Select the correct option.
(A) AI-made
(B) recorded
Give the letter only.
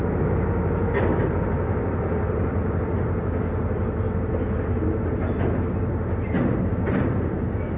B